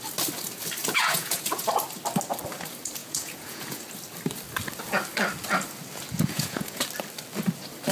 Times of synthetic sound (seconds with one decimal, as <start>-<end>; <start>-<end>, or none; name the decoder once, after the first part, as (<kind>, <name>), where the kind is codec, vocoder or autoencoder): 0.8-1.7 (vocoder, Vocos); 3.0-3.8; 6.1-6.8

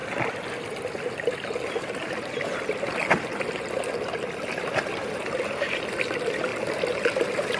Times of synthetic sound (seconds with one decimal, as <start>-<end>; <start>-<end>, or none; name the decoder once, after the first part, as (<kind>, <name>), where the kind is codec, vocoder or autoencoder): none

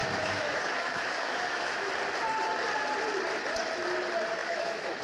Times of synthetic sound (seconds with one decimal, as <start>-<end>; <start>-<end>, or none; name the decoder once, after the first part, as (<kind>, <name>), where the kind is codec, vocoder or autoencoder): 0.0-1.9 (autoencoder, DAC-VAE); 4.4-5.0